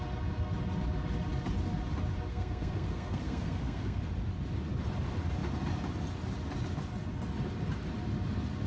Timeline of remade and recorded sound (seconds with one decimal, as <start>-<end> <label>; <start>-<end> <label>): 0.0-2.3 recorded; 2.3-4.0 remade; 4.0-8.7 recorded